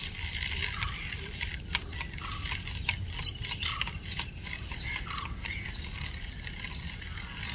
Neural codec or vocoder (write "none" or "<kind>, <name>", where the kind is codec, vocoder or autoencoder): none